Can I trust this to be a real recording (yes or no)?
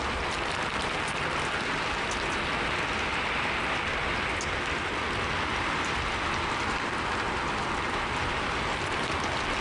yes